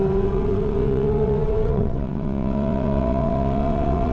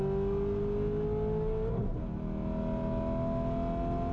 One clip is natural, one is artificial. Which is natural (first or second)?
second